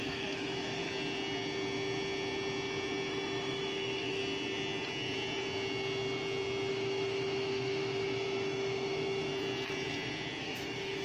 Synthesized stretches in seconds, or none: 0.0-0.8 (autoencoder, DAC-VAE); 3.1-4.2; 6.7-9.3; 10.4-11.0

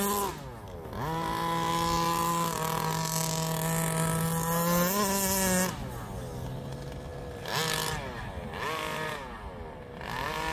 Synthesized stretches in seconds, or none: none

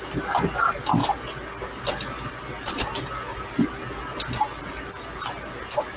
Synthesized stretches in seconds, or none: none

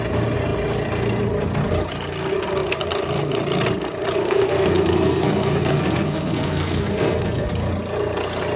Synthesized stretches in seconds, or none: 4.2-7.5 (codec, SNAC)

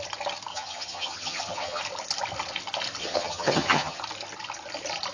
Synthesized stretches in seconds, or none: 0.5-1.8 (vocoder, HiFi-GAN); 3.0-4.0

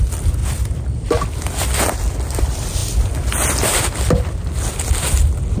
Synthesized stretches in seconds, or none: 0.4-2.4 (vocoder, BigVGAN v2)